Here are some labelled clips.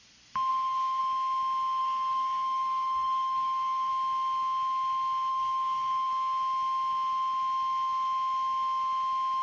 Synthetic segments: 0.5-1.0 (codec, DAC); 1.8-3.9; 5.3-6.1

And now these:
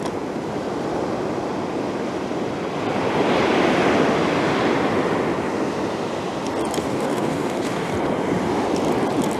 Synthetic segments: 6.8-7.9 (codec, DAC)

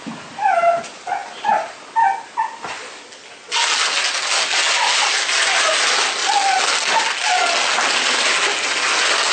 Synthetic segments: none

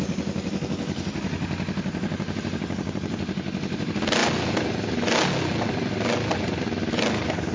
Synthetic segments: none